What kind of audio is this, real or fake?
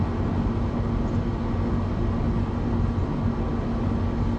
real